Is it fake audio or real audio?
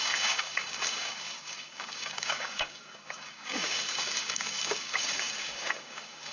fake